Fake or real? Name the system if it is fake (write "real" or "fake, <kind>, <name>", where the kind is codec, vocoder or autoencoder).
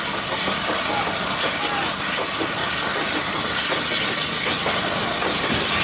real